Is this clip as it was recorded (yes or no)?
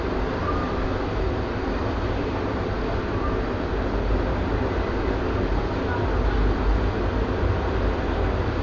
yes